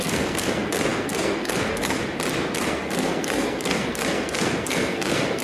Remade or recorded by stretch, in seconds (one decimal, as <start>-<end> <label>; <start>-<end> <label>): 0.0-2.0 remade; 2.0-2.6 recorded; 2.6-5.4 remade